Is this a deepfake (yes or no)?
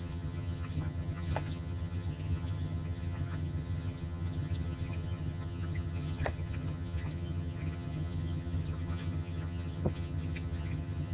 yes